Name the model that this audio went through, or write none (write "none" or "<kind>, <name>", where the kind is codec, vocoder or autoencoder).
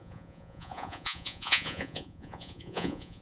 vocoder, Vocos